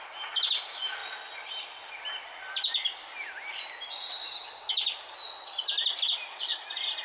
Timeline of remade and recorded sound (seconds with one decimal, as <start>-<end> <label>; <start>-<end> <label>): 0.0-7.0 recorded